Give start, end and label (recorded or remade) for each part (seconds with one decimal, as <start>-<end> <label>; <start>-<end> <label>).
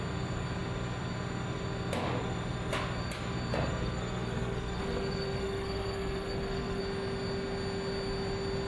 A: 0.0-3.5 recorded; 3.5-6.8 remade; 6.8-8.7 recorded